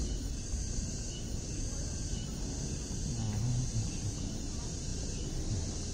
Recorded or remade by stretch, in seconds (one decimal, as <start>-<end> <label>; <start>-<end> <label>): 0.0-5.9 recorded